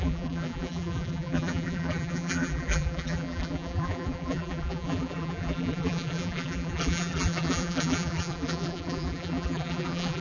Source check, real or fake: fake